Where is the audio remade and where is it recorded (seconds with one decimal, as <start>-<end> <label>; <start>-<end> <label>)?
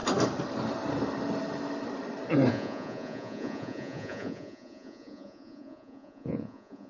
0.0-2.5 recorded; 2.5-6.9 remade